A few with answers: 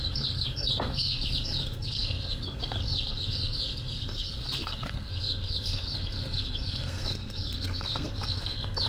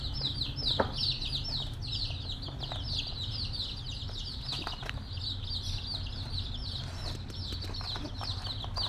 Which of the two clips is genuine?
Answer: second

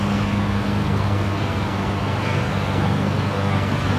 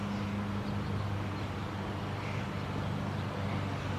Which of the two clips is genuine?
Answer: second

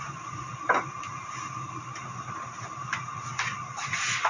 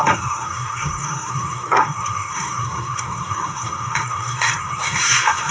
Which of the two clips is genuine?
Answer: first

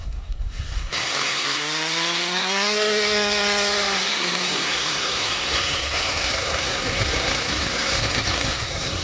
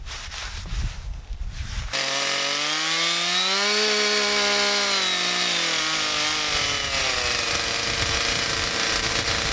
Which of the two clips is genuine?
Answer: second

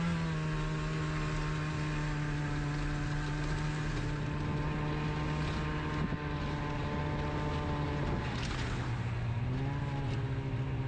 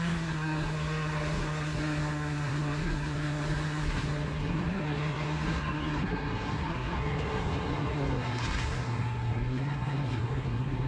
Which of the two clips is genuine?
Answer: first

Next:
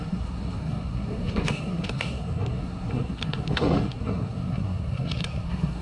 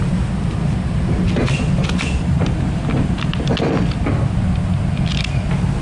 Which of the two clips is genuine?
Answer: second